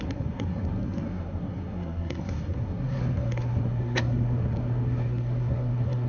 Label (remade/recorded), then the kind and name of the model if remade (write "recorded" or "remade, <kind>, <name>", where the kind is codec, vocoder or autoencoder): remade, codec, SNAC